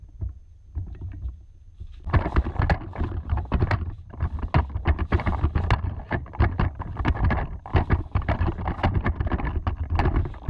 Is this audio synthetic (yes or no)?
no